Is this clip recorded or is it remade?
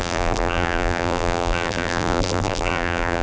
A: remade